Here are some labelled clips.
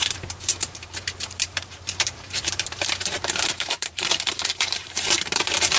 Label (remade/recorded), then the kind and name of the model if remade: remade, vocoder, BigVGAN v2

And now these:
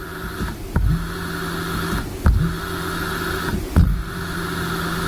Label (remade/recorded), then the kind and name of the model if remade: recorded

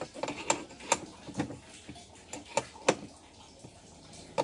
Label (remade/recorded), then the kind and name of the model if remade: recorded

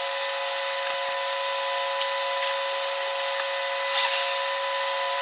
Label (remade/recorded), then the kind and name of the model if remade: recorded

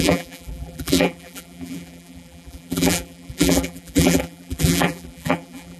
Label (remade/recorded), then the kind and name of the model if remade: remade, vocoder, BigVGAN v2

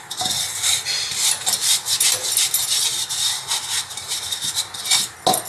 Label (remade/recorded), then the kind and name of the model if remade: recorded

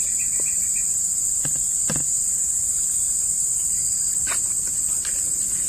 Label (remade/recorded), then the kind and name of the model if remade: recorded